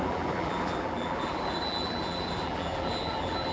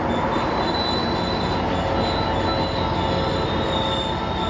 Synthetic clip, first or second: first